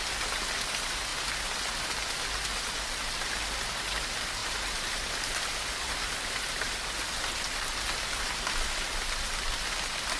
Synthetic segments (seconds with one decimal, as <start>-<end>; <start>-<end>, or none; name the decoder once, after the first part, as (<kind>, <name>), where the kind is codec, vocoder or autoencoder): 4.4-6.7 (vocoder, BigVGAN v2)